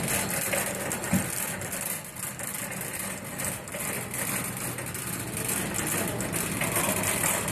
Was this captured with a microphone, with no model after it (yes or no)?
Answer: yes